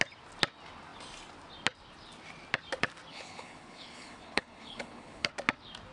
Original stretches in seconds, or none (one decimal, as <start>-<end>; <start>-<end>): 0.0-3.1; 5.3-5.9